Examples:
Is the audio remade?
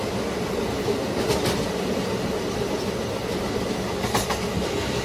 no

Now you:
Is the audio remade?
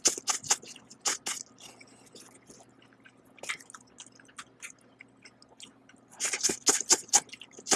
no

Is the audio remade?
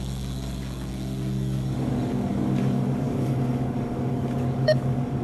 yes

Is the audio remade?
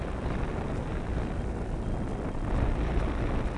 no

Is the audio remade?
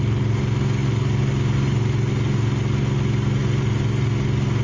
no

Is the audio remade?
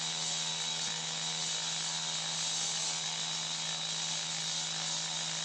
no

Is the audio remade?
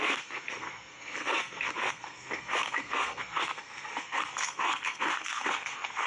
yes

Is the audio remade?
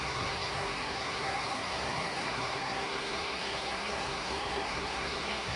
yes